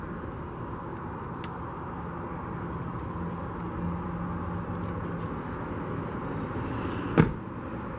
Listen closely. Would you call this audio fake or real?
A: real